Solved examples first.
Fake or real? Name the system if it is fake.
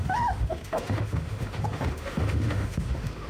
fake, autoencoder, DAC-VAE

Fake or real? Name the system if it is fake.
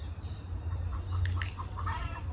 real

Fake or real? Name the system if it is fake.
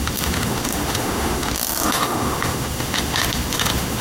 fake, autoencoder, DAC-VAE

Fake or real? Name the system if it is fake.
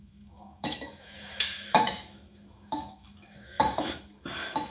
fake, autoencoder, DAC-VAE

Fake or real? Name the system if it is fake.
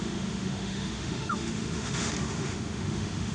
fake, autoencoder, DAC-VAE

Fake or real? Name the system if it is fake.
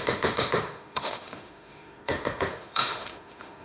fake, autoencoder, DAC-VAE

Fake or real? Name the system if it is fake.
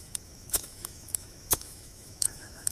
fake, autoencoder, DAC-VAE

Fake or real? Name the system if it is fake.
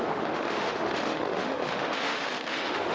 fake, autoencoder, DAC-VAE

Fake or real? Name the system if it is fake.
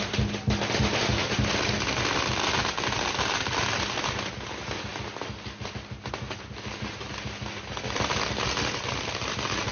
real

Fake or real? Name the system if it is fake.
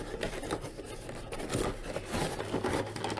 real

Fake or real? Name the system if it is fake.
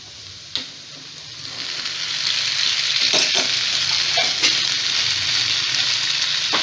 real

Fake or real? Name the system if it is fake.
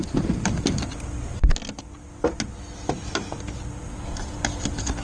real